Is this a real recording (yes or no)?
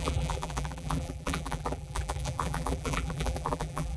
no